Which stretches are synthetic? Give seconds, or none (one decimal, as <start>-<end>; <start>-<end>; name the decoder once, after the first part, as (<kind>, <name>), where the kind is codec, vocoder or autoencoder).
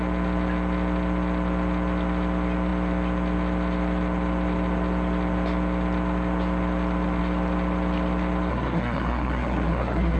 8.5-10.2 (codec, SNAC)